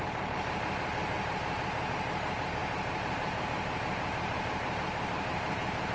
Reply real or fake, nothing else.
real